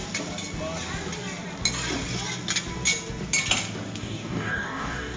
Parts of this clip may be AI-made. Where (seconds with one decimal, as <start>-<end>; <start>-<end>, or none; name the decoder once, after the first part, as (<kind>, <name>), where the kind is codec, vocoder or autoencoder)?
4.0-5.2 (codec, DAC)